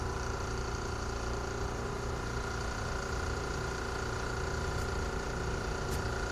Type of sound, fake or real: fake